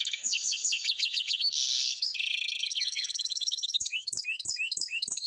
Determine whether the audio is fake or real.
fake